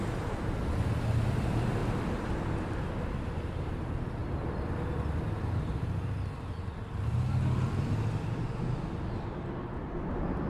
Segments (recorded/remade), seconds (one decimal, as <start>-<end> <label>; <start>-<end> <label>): 0.0-10.5 recorded